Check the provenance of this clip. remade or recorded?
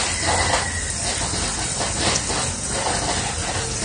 recorded